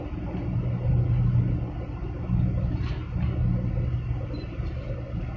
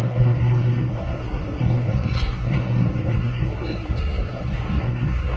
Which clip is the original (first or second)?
first